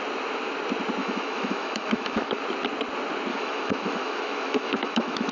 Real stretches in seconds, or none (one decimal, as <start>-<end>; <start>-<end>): 0.0-1.0; 2.4-3.3